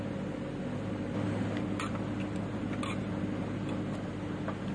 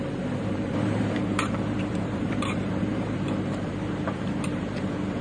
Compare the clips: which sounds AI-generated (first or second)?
second